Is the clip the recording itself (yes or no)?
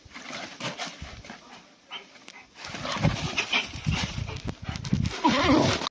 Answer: yes